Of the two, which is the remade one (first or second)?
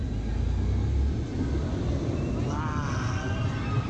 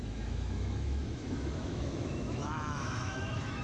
second